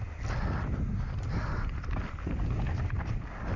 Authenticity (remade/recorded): recorded